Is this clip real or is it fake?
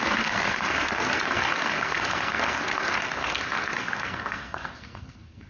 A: fake